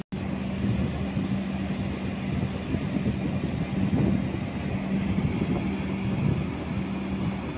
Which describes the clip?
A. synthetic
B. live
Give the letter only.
B